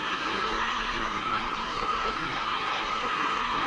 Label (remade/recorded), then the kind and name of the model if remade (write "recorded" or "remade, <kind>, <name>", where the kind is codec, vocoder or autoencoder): remade, codec, SNAC